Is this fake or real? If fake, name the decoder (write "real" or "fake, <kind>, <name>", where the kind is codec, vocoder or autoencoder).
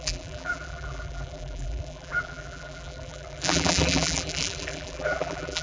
fake, vocoder, BigVGAN v2